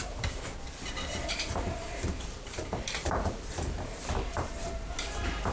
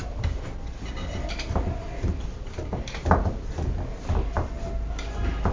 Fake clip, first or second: first